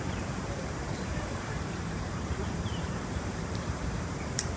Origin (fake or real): fake